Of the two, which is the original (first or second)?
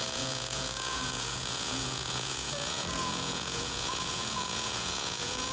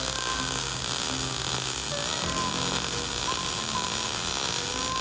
second